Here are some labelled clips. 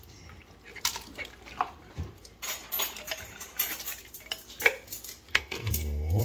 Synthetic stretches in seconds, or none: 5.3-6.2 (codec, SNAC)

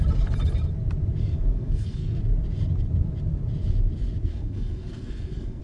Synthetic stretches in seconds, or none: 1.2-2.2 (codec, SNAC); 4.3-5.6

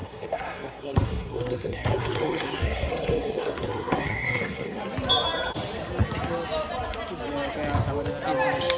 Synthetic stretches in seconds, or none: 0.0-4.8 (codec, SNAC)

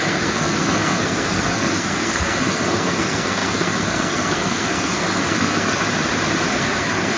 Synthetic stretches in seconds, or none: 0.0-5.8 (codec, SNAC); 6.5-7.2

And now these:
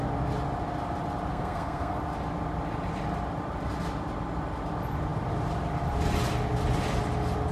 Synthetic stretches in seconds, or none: 1.3-2.0 (codec, SNAC)